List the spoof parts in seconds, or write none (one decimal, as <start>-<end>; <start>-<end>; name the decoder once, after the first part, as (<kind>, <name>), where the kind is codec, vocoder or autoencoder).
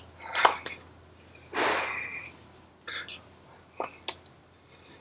none